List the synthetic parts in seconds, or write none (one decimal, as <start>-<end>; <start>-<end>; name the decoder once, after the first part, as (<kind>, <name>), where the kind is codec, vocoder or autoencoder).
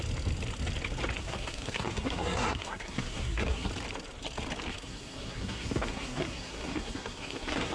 1.2-3.7 (codec, SNAC); 4.7-7.7